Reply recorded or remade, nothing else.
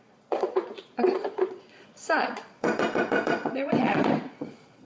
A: remade